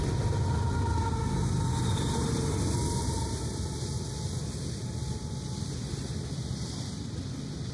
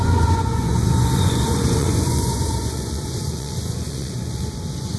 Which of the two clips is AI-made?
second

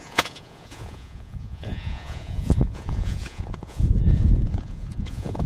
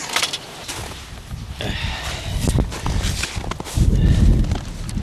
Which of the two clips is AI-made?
first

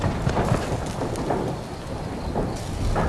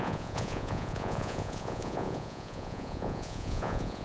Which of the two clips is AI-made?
second